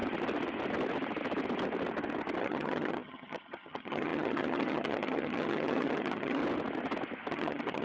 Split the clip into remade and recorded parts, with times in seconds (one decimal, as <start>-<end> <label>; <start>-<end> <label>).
0.0-2.4 recorded; 2.4-6.4 remade; 6.4-7.3 recorded; 7.3-7.8 remade